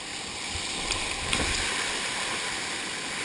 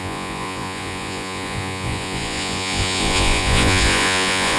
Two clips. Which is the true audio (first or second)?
first